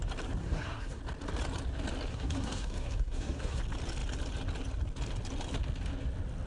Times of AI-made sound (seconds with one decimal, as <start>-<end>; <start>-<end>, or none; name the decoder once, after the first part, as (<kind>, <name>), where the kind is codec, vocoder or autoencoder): 0.4-1.0 (codec, SNAC); 2.1-3.6